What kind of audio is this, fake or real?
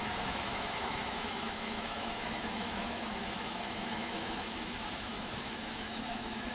fake